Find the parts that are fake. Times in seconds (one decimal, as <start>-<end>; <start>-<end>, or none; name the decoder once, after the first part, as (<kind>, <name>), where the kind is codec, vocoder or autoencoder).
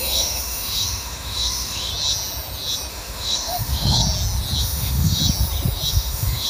0.0-1.9 (autoencoder, DAC-VAE); 2.9-4.0; 4.6-5.2; 5.9-6.5